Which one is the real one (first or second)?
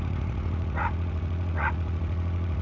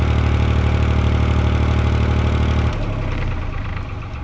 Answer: second